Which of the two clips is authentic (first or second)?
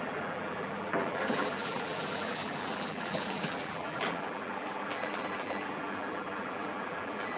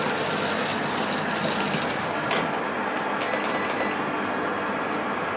second